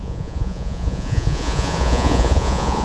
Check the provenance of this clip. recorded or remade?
remade